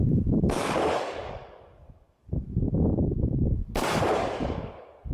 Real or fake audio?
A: fake